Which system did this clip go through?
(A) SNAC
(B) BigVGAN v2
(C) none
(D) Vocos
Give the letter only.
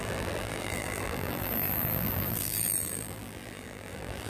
B